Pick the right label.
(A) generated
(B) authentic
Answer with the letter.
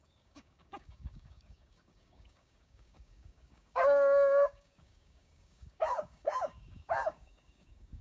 A